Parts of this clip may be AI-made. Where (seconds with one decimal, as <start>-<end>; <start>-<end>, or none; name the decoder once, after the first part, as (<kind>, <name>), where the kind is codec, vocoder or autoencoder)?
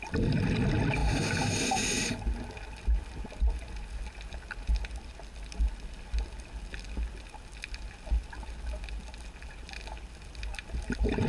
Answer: none